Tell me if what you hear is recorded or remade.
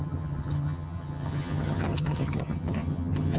remade